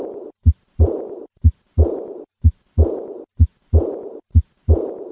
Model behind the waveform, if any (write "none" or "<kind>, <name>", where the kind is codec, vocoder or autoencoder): vocoder, BigVGAN v2